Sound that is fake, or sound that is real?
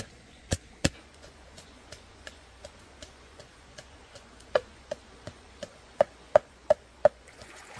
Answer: fake